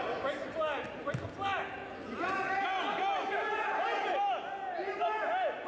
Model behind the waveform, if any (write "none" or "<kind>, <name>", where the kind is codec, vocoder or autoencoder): none